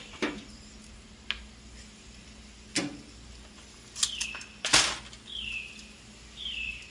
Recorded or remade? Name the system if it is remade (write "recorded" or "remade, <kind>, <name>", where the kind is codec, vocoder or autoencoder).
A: recorded